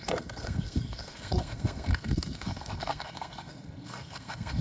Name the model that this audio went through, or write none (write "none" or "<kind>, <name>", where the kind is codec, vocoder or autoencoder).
codec, SNAC